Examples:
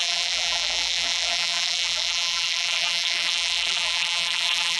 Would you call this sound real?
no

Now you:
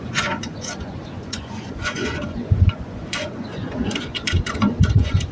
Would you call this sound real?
no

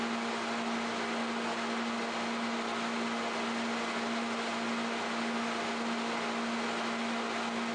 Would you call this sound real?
yes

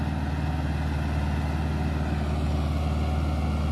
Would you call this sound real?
yes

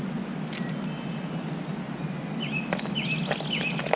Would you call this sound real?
yes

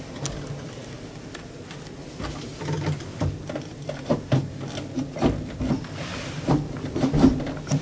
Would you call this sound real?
yes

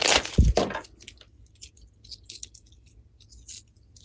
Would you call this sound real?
yes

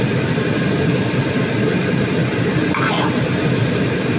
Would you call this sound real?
yes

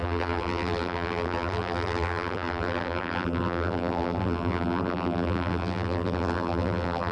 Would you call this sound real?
no